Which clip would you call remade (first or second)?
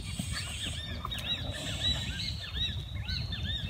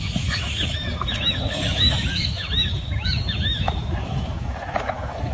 second